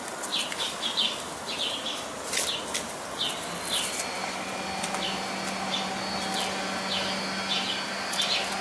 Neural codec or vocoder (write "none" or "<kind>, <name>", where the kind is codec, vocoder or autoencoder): none